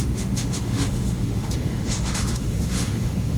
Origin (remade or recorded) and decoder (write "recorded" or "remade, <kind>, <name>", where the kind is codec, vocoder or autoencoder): remade, autoencoder, DAC-VAE